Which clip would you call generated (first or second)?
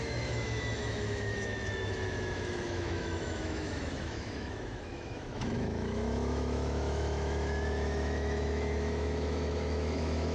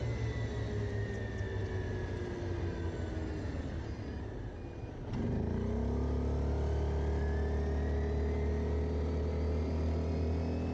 first